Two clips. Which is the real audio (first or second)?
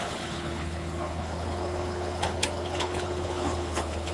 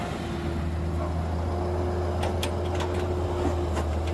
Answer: second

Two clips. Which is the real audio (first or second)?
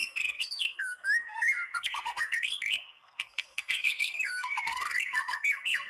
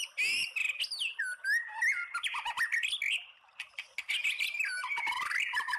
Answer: second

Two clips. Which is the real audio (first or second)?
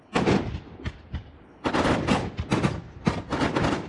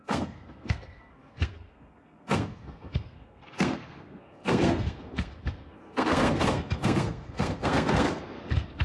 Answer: first